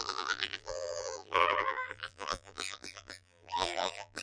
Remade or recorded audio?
remade